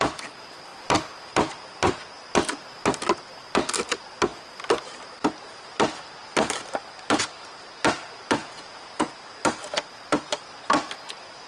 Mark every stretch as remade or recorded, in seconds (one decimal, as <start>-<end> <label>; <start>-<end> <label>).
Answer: 0.0-8.4 recorded; 8.4-9.1 remade; 9.1-11.5 recorded